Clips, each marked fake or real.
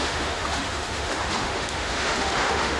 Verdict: fake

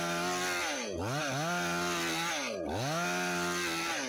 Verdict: real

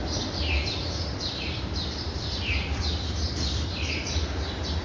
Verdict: fake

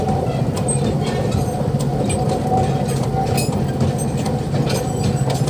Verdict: real